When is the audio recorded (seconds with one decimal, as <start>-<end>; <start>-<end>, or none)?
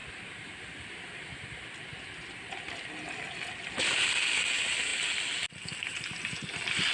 0.0-6.9